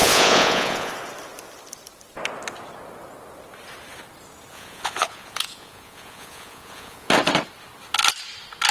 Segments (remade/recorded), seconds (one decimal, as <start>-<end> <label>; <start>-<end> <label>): 0.0-0.9 remade; 0.9-4.5 recorded; 4.5-7.1 remade; 7.1-8.7 recorded